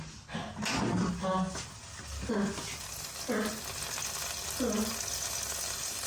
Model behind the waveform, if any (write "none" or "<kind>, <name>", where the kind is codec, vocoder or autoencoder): none